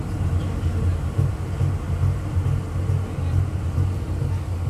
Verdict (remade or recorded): recorded